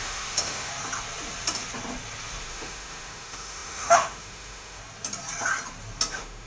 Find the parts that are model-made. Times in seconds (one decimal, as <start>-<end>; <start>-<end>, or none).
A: 0.0-0.7; 2.4-4.8; 6.1-6.5

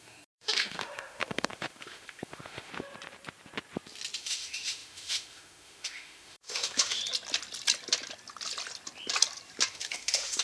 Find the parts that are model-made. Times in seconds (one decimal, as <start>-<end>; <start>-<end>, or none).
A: 0.0-2.7; 4.2-7.0; 9.7-10.4

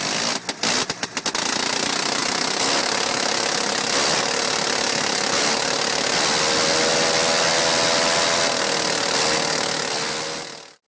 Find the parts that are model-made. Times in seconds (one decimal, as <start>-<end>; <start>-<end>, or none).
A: none